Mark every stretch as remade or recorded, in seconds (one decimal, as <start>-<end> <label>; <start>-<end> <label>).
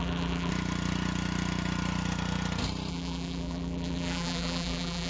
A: 0.0-0.5 remade; 0.5-2.9 recorded; 2.9-5.1 remade